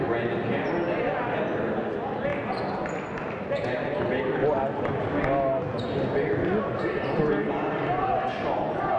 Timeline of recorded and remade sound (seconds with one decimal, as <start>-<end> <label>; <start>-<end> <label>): 0.0-9.0 recorded